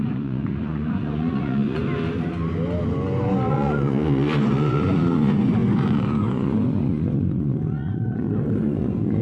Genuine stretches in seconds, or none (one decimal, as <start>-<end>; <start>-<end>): 1.8-3.5